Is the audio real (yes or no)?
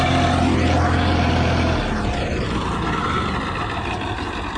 yes